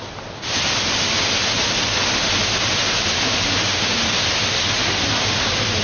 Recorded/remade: recorded